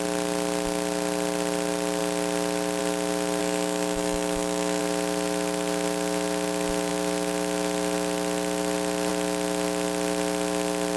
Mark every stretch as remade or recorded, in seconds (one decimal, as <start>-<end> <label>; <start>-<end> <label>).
0.0-3.4 recorded; 3.4-4.8 remade; 4.8-11.0 recorded